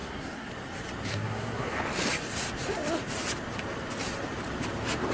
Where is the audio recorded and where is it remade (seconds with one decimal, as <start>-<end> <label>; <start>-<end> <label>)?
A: 0.0-0.5 remade; 0.5-1.1 recorded; 1.1-1.8 remade; 1.8-5.1 recorded